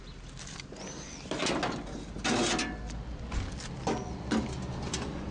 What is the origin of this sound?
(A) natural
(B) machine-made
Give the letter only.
A